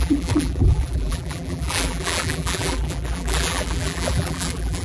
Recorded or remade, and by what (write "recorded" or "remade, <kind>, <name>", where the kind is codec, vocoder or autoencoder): remade, vocoder, BigVGAN v2